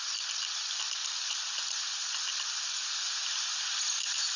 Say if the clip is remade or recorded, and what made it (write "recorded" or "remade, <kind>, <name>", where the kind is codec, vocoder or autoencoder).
recorded